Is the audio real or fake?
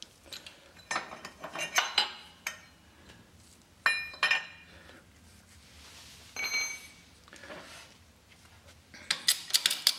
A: real